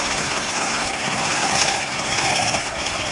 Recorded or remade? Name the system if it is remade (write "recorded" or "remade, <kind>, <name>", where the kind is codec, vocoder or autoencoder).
remade, codec, SNAC